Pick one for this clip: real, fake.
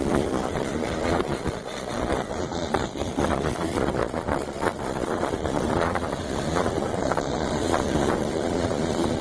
fake